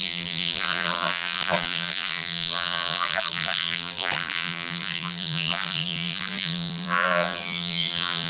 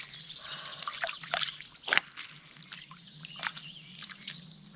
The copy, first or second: first